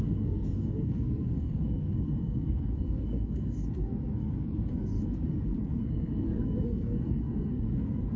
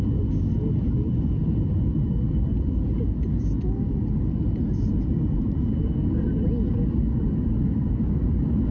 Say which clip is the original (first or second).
second